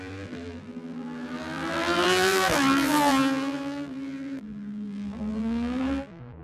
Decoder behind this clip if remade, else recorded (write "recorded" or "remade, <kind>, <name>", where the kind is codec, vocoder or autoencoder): remade, vocoder, BigVGAN v2